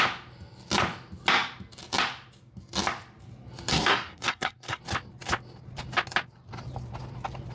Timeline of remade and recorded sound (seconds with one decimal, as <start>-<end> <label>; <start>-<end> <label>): 0.0-3.7 recorded; 3.7-4.8 remade; 4.8-7.5 recorded